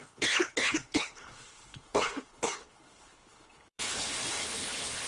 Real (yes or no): no